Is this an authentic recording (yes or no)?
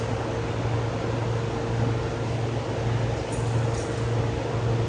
yes